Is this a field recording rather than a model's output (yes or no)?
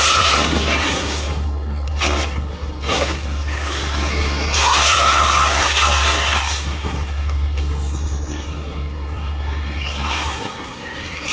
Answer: no